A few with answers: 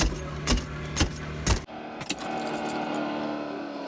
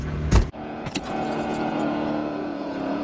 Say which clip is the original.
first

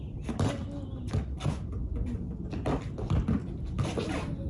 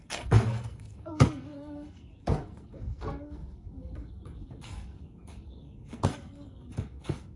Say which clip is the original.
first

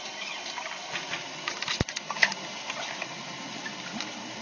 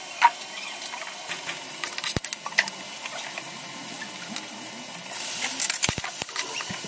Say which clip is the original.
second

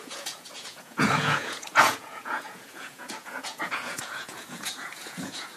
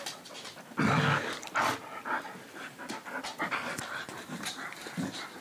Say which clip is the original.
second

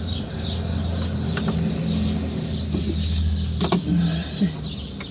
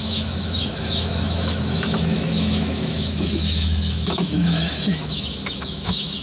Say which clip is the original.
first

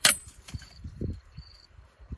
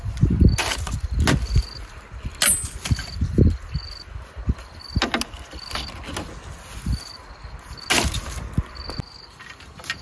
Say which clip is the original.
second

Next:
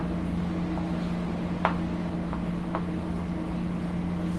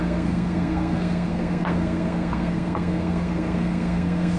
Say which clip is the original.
first